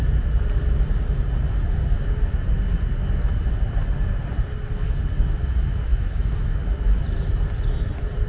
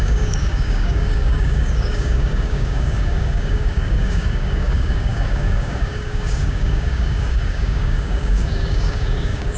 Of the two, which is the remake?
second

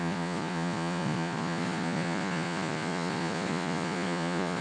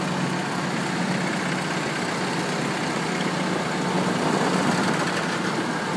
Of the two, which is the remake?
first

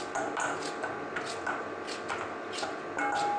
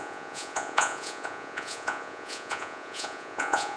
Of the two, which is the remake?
second